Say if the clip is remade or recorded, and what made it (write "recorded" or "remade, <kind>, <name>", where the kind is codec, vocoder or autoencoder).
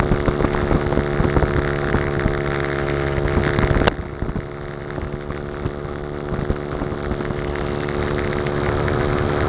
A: recorded